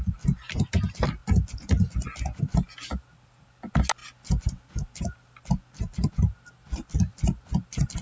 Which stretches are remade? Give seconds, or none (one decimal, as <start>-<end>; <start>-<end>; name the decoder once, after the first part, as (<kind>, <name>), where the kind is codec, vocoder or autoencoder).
none